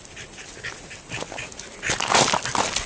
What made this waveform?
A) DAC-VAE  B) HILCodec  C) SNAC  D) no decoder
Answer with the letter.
D